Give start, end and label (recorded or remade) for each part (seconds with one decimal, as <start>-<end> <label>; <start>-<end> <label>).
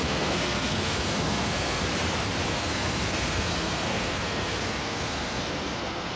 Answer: 0.0-1.8 remade; 1.8-2.5 recorded; 2.5-6.2 remade